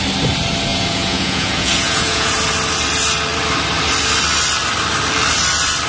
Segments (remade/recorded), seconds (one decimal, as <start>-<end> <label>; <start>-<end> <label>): 0.0-0.7 recorded; 0.7-2.3 remade; 2.3-5.9 recorded